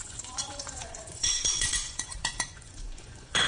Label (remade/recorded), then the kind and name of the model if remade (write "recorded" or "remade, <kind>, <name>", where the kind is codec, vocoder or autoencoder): remade, vocoder, Vocos